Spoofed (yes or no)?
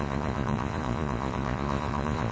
yes